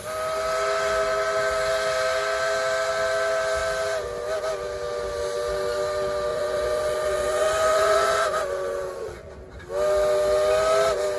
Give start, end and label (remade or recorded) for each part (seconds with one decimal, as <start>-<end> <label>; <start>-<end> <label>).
0.0-6.3 recorded; 6.3-9.4 remade; 9.4-11.2 recorded